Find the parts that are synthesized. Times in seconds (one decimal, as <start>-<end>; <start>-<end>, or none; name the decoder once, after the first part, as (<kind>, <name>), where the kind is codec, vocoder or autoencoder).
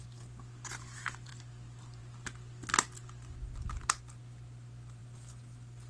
none